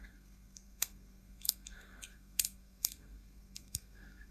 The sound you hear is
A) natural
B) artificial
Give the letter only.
B